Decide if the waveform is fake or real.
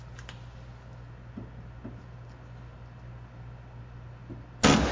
real